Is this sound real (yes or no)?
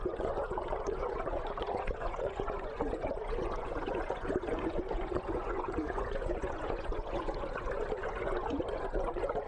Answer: no